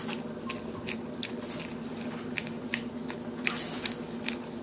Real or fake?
real